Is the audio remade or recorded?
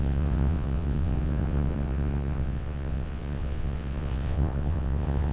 remade